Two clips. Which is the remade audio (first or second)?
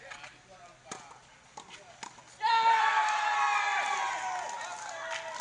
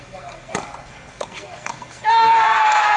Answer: second